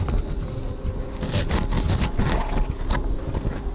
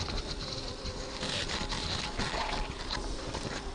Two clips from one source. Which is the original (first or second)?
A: first